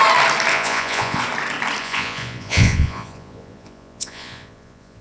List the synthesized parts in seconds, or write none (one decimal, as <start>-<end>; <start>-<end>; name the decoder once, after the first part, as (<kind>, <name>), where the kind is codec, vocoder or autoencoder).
0.5-1.2 (vocoder, Vocos); 1.8-5.0